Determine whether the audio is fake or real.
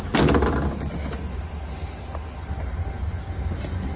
real